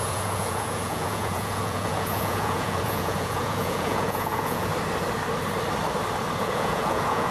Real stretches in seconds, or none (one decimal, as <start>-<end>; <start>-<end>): 4.7-6.4